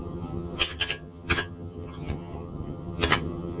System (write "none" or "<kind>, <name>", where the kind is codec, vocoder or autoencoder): vocoder, HiFi-GAN